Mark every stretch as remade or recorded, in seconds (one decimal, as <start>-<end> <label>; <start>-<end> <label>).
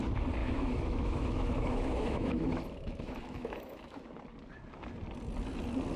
0.0-0.4 recorded; 0.4-4.0 remade; 4.0-6.0 recorded